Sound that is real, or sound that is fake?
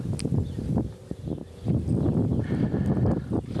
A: real